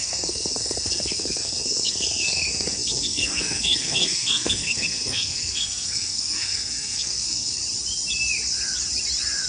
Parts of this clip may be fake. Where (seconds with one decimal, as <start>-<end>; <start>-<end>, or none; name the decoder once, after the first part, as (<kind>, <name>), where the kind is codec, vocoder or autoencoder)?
0.0-7.6 (codec, SNAC)